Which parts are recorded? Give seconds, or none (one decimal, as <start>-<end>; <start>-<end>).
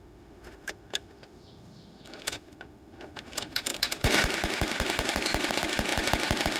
none